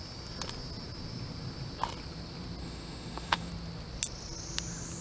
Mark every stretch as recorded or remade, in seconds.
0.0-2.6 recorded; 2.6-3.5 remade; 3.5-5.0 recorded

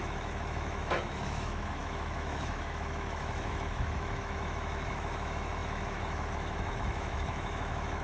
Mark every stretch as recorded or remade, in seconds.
0.0-8.0 remade

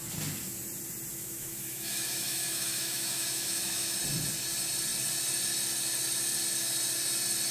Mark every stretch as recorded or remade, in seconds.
0.0-1.1 recorded; 1.1-4.0 remade; 4.0-7.5 recorded

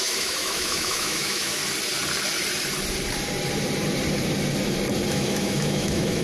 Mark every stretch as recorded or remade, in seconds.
0.0-1.6 remade; 1.6-5.1 recorded; 5.1-6.2 remade

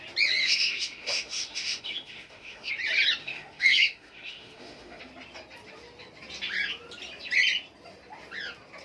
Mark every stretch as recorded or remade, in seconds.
0.0-0.4 recorded; 0.4-2.7 remade; 2.7-3.2 recorded; 3.2-5.0 remade; 5.0-8.8 recorded

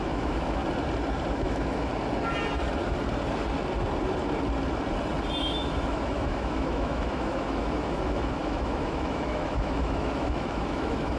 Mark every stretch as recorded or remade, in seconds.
0.0-0.6 remade; 0.6-1.3 recorded; 1.3-1.9 remade; 1.9-5.4 recorded; 5.4-11.2 remade

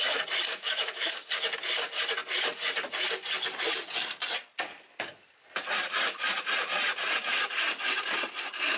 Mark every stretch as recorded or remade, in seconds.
0.0-0.5 recorded; 0.5-1.1 remade; 1.1-8.8 recorded